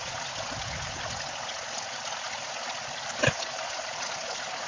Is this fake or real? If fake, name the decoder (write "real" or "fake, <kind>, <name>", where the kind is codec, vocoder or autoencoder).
real